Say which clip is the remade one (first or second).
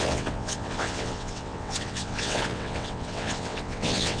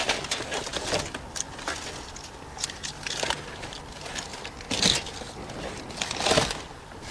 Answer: first